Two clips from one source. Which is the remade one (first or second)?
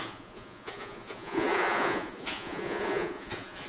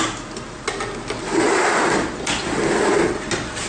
first